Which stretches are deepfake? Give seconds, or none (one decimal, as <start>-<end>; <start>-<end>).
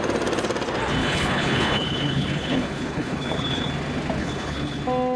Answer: 1.0-3.7; 4.2-4.8